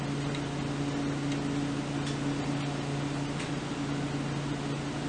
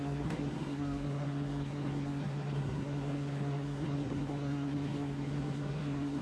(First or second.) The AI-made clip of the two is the second